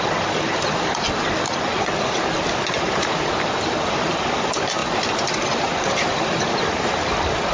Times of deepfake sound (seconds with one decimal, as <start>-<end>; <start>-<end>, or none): none